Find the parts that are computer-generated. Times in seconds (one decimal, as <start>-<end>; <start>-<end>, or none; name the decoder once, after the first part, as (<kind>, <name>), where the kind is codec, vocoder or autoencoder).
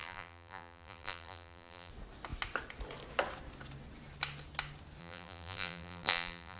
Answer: 0.0-1.9 (vocoder, BigVGAN v2); 5.0-6.6